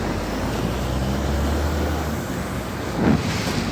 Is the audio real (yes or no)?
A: yes